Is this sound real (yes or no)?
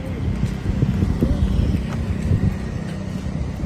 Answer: yes